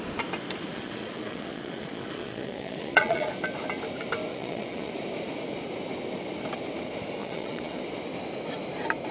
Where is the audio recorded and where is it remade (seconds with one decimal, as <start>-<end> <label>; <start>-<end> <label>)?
0.0-0.7 recorded; 0.7-3.3 remade; 3.3-4.3 recorded; 4.3-4.9 remade; 4.9-7.2 recorded; 7.2-7.8 remade; 7.8-9.1 recorded